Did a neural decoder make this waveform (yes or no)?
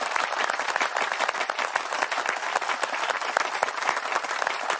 no